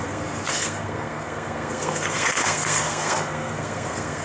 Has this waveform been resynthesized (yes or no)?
yes